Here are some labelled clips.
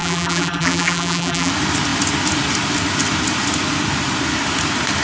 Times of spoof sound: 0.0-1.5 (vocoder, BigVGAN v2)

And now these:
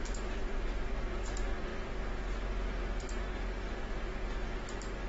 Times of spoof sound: none